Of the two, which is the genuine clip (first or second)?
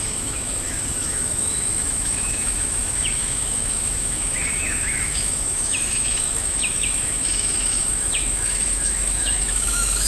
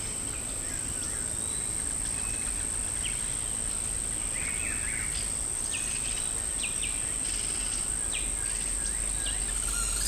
second